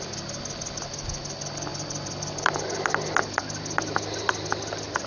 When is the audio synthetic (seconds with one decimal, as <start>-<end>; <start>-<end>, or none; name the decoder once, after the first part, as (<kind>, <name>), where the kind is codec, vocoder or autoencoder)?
none